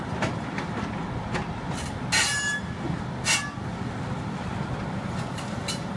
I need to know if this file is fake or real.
real